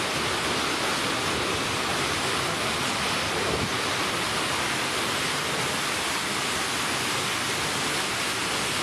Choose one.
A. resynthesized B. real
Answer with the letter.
B